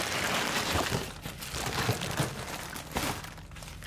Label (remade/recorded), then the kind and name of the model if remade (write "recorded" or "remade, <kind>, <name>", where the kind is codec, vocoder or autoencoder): recorded